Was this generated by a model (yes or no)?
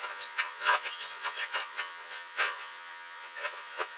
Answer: yes